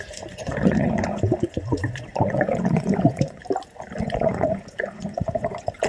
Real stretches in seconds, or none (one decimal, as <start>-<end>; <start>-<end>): 3.4-4.0